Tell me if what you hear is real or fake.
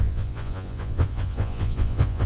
fake